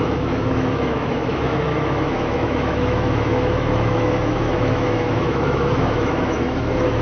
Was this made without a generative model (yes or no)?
no